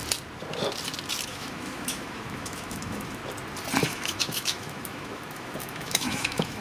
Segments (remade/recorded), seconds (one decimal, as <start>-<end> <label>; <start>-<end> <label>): 0.0-1.3 recorded; 1.3-3.2 remade; 3.2-3.8 recorded; 3.8-6.6 remade